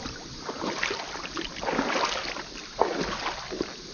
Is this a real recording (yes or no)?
yes